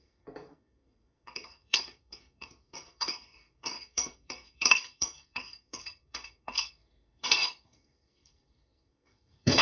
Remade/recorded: remade